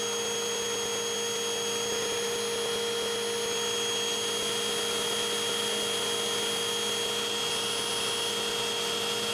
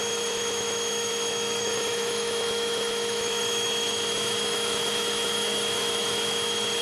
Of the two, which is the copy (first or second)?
second